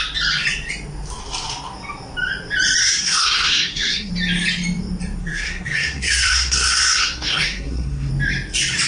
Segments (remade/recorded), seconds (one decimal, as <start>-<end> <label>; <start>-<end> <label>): 0.0-2.8 recorded; 2.8-4.1 remade; 4.1-5.2 recorded; 5.2-8.1 remade; 8.1-8.9 recorded